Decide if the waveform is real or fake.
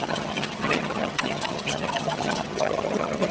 fake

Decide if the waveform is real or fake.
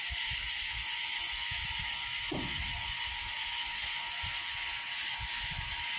real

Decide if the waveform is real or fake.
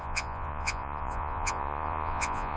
fake